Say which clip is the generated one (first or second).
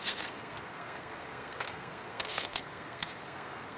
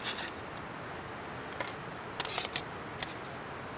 first